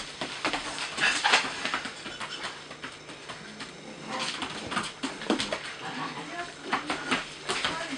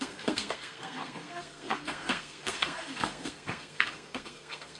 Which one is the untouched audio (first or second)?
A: first